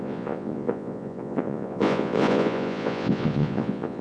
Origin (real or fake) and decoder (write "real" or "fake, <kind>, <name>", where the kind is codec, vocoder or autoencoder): fake, vocoder, Vocos